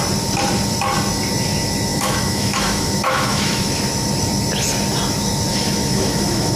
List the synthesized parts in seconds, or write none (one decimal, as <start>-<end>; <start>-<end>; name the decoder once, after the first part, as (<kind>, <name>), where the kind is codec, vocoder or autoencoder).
1.9-3.8 (autoencoder, DAC-VAE); 5.5-6.6